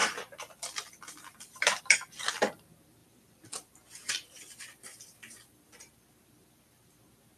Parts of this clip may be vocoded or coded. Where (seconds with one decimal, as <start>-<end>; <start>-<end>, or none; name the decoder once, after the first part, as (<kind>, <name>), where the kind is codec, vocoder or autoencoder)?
3.0-5.2 (vocoder, BigVGAN v2)